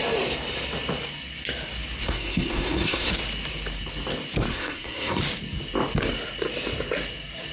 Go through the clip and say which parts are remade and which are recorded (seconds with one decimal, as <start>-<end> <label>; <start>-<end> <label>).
0.0-2.0 recorded; 2.0-3.1 remade; 3.1-4.5 recorded; 4.5-5.2 remade; 5.2-7.5 recorded